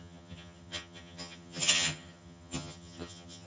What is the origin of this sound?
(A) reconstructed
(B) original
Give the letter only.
A